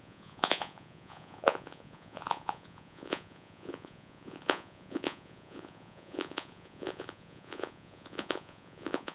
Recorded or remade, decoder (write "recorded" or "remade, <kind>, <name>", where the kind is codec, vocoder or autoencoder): remade, vocoder, Vocos